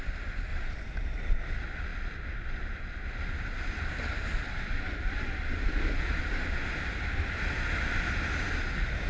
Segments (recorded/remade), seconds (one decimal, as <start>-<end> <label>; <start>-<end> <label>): 0.0-0.5 recorded; 0.5-1.3 remade; 1.3-9.1 recorded